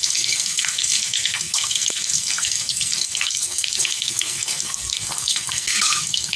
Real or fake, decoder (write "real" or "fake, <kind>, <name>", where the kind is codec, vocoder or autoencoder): fake, codec, SNAC